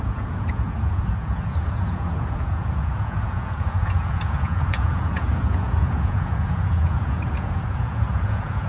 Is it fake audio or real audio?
fake